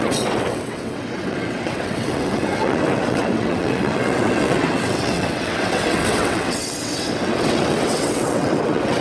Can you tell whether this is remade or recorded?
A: remade